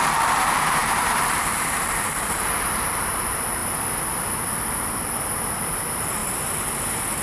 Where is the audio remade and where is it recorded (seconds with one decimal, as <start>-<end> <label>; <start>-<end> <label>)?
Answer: 0.0-3.6 remade; 3.6-4.4 recorded; 4.4-6.2 remade; 6.2-7.2 recorded